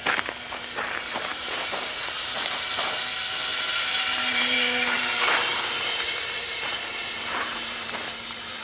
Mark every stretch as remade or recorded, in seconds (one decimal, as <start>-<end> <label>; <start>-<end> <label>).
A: 0.0-1.3 recorded; 1.3-1.9 remade; 1.9-3.5 recorded; 3.5-8.6 remade